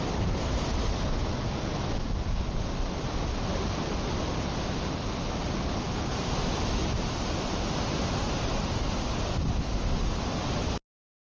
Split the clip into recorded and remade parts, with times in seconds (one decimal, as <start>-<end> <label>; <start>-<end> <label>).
0.0-11.3 recorded